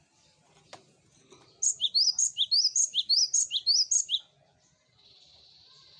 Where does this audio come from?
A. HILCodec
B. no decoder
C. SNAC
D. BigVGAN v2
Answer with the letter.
B